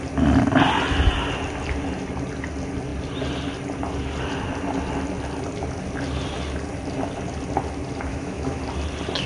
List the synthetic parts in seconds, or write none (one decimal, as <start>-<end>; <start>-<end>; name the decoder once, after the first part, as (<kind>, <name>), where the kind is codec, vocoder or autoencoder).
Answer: 8.1-8.6 (autoencoder, DAC-VAE)